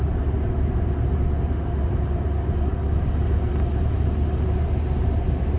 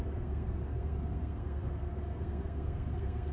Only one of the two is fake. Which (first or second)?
second